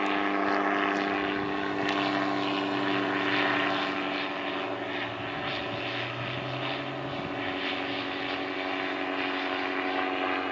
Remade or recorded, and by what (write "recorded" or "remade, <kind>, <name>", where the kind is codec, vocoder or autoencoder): recorded